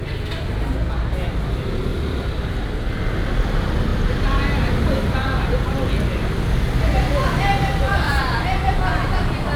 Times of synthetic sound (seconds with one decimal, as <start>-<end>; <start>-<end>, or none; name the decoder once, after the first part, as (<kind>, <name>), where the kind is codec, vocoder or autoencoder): 1.9-2.9 (vocoder, BigVGAN v2)